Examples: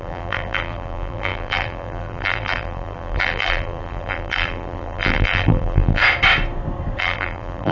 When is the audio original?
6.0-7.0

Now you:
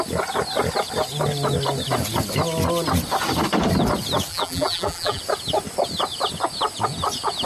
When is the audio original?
0.0-4.3; 5.2-7.4

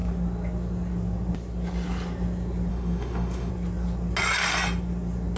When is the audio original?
0.0-2.7; 3.5-5.4

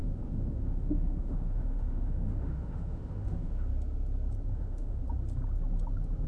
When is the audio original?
3.7-4.5; 5.0-6.3

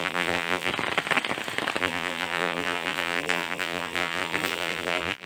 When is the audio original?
0.7-1.8

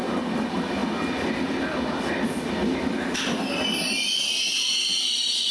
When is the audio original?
0.0-5.5

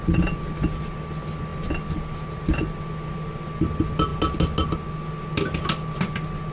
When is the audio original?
0.0-6.5